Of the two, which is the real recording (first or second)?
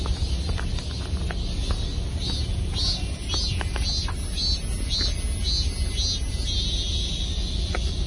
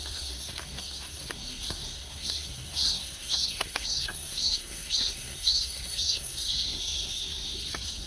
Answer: first